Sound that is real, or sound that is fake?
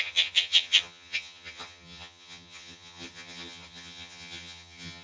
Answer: fake